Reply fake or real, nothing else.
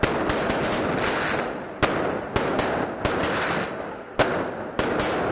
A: real